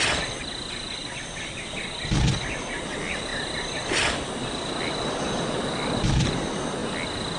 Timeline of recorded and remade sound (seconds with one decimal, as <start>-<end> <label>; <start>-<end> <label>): 0.0-1.0 recorded; 1.0-1.6 remade; 1.6-7.4 recorded